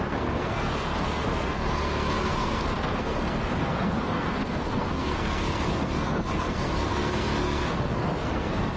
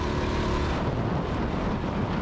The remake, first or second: first